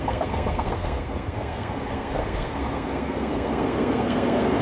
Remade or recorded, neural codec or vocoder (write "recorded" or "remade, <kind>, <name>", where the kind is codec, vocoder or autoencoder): remade, codec, SNAC